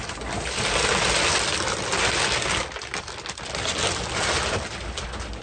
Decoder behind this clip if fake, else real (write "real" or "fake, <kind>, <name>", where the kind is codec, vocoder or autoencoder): real